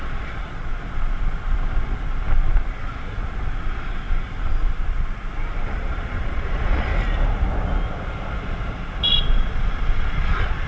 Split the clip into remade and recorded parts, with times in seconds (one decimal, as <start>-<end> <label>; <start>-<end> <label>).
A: 0.0-0.7 remade; 0.7-5.7 recorded; 5.7-6.9 remade; 6.9-9.1 recorded; 9.1-10.7 remade